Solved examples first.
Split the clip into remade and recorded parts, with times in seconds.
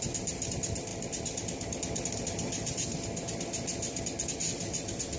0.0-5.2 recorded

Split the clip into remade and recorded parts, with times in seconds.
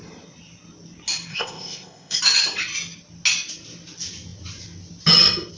0.0-1.3 recorded; 1.3-2.2 remade; 2.2-5.6 recorded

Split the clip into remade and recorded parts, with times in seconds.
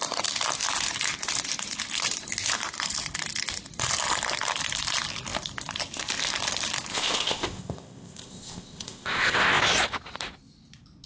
0.0-6.9 recorded; 6.9-9.6 remade; 9.6-11.1 recorded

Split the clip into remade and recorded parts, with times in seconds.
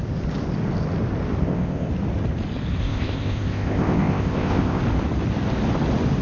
0.0-1.4 recorded; 1.4-1.9 remade; 1.9-2.8 recorded; 2.8-4.8 remade; 4.8-6.2 recorded